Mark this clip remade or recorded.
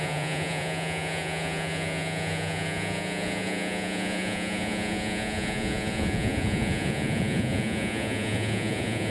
remade